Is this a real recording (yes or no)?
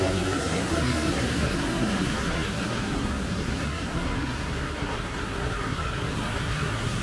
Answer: no